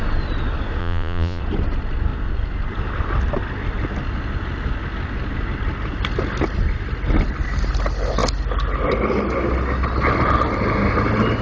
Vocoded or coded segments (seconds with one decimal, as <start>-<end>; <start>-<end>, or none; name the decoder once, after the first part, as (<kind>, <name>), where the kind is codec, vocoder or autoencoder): 0.8-1.4 (vocoder, Vocos)